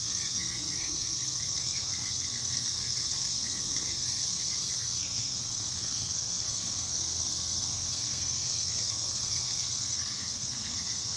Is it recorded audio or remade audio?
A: remade